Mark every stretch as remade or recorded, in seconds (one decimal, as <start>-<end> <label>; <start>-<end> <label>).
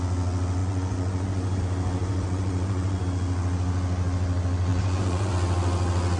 0.0-0.6 recorded; 0.6-1.6 remade; 1.6-2.0 recorded; 2.0-3.0 remade; 3.0-4.7 recorded; 4.7-5.3 remade; 5.3-6.2 recorded